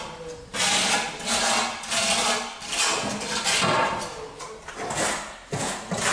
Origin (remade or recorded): recorded